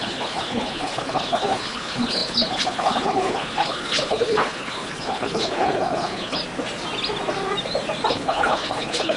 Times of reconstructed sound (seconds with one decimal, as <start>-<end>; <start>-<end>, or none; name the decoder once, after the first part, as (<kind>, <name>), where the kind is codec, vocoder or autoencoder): 0.0-6.4 (codec, HILCodec); 8.1-9.2

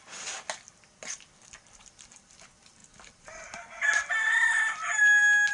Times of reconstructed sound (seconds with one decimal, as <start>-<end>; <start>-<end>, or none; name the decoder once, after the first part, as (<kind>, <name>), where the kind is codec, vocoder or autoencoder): none

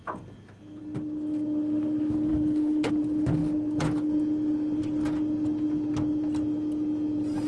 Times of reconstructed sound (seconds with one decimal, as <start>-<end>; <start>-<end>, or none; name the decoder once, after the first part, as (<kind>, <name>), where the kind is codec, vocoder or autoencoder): 2.3-2.9 (codec, HILCodec)